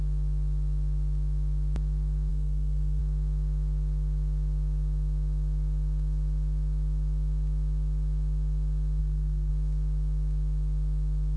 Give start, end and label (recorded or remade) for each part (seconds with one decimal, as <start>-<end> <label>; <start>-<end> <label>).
0.0-2.3 recorded; 2.3-3.0 remade; 3.0-9.0 recorded; 9.0-9.5 remade; 9.5-11.4 recorded